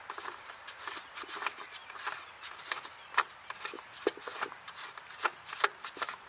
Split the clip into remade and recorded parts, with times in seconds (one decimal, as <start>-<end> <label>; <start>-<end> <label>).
0.0-6.3 recorded